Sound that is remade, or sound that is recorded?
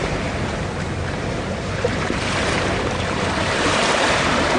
remade